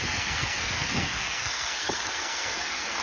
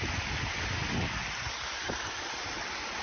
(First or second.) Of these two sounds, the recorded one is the second